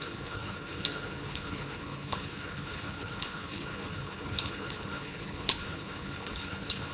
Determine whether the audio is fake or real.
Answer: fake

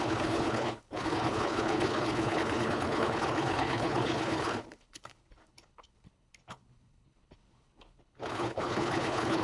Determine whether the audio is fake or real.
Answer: fake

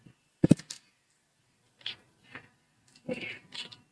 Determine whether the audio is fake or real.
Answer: real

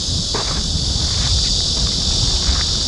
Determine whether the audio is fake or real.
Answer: real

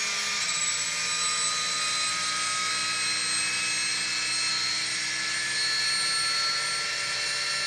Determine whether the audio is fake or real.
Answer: real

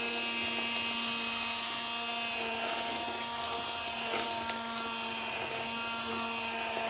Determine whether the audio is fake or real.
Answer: real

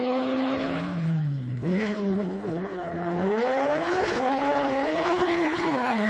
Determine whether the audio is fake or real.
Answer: fake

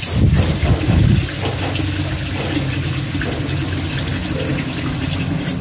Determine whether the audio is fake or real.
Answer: real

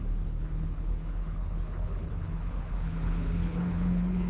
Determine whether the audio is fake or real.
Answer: fake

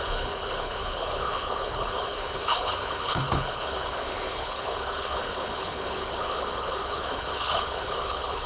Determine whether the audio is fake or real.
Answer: fake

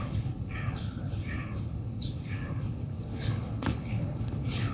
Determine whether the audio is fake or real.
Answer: fake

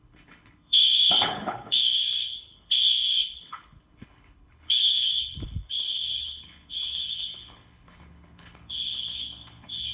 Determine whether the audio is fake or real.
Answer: fake